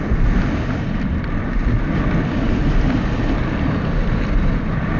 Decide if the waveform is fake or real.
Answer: real